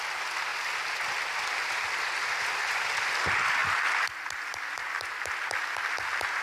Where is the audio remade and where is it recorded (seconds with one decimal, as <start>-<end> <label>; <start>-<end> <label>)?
0.0-6.4 recorded